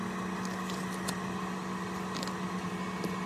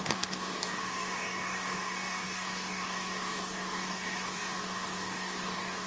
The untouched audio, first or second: first